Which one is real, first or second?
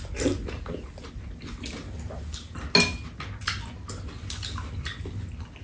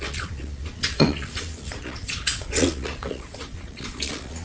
first